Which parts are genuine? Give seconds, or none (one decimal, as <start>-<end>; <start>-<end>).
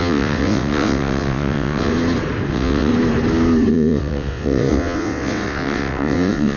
1.9-2.5; 2.9-3.7